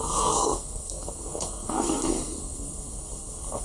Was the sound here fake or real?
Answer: fake